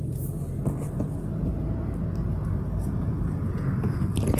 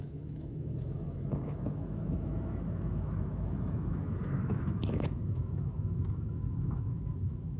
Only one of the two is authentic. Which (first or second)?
first